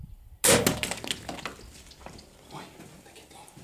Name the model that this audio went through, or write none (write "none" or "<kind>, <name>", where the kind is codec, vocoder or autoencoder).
none